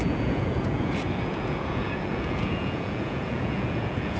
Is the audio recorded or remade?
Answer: remade